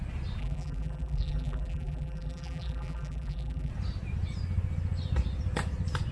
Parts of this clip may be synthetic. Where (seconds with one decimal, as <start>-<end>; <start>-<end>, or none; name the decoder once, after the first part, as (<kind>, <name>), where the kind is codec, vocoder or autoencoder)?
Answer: 0.4-3.7 (vocoder, BigVGAN v2)